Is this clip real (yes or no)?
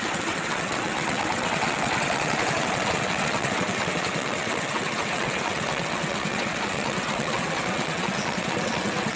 no